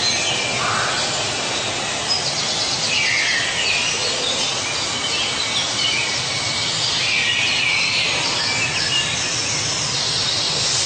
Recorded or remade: recorded